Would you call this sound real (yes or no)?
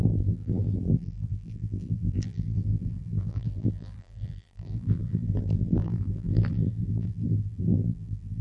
no